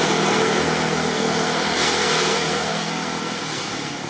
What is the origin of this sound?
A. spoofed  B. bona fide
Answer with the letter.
A